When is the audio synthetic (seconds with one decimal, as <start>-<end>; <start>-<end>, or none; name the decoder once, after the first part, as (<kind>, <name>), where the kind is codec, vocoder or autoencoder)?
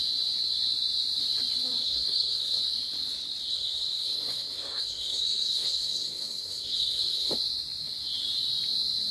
1.8-2.6 (codec, SNAC); 3.5-7.3